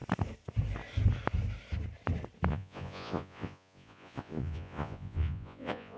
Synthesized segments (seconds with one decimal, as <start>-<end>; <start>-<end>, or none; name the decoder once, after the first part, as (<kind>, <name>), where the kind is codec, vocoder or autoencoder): 2.5-6.0 (vocoder, Vocos)